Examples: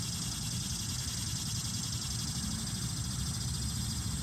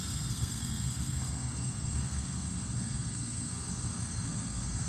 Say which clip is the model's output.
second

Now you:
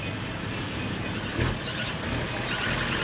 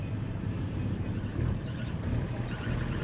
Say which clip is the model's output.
second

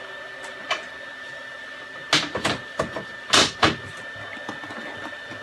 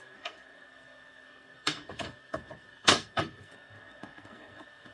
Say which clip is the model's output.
second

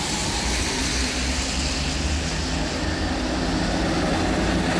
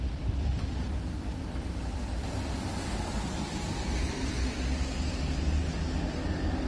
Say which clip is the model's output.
second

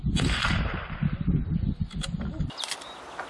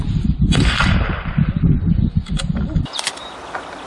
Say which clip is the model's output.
second